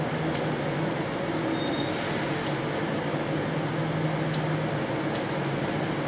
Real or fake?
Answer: real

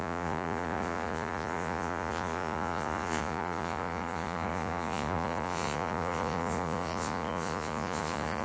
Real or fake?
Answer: fake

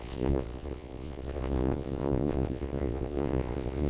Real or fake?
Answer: fake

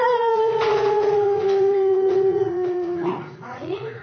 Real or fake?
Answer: fake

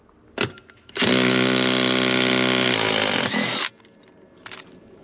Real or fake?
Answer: real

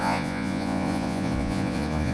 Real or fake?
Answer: fake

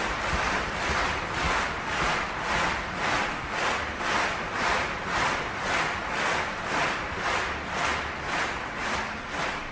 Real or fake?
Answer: real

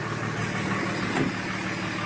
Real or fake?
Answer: real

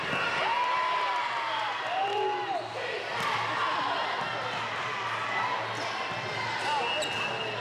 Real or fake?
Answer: real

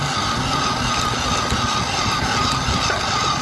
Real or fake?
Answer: real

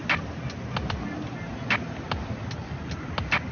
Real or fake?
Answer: real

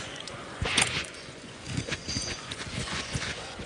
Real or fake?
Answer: fake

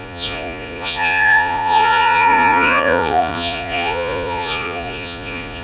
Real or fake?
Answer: fake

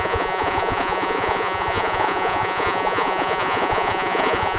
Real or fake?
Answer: fake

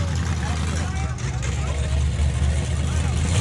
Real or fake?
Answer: real